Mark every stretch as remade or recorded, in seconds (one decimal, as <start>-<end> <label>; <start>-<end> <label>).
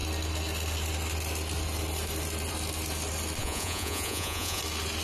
0.0-3.4 recorded; 3.4-4.6 remade; 4.6-5.0 recorded